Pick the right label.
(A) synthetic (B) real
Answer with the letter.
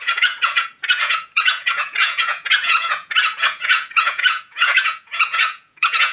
A